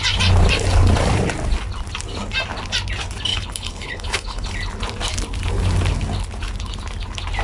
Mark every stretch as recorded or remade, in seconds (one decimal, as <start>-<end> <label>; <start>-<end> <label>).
0.0-3.3 recorded; 3.3-4.5 remade; 4.5-7.4 recorded